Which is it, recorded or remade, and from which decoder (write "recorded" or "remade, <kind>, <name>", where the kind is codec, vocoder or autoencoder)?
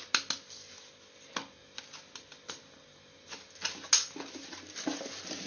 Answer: recorded